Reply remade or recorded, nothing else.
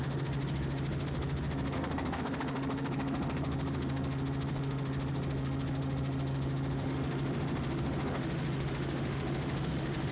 remade